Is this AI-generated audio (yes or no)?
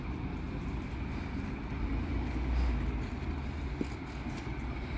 no